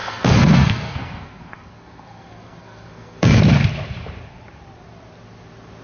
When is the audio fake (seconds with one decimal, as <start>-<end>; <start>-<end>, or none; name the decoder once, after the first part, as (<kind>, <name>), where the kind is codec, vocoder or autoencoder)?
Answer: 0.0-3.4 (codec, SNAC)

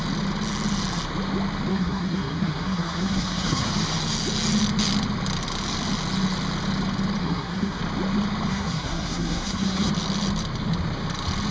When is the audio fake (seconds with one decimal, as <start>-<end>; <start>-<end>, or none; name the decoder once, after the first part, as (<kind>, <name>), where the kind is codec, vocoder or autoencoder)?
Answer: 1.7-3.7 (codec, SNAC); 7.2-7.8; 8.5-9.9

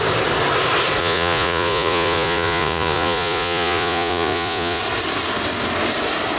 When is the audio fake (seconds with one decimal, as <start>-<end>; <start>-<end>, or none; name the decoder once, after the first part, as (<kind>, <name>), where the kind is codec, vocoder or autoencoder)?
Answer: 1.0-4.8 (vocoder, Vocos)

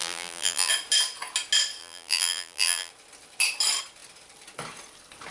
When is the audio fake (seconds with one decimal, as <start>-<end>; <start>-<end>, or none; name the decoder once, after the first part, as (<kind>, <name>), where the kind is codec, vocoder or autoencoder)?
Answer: 0.0-0.7 (vocoder, BigVGAN v2); 1.8-2.9

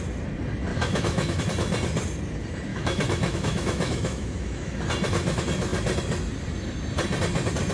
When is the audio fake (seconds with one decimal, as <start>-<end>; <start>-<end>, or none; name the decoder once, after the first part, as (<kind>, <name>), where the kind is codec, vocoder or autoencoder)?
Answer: 0.7-1.4 (autoencoder, DAC-VAE); 2.7-4.8

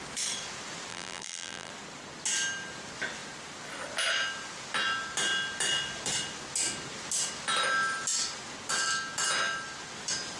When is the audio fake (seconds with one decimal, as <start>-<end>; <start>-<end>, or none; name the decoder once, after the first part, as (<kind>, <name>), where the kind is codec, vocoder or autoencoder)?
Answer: 0.9-1.7 (vocoder, BigVGAN v2)

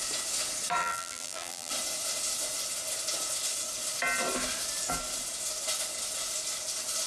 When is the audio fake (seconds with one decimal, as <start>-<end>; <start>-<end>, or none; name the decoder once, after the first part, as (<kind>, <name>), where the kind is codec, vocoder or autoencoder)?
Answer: 0.8-1.7 (vocoder, BigVGAN v2)

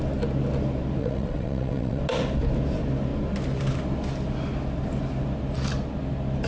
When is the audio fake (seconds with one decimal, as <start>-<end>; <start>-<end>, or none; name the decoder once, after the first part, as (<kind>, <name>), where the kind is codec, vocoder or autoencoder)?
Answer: 1.0-2.0 (vocoder, WaveNeXt)